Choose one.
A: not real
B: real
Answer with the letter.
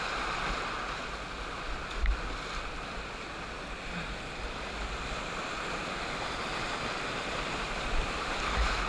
B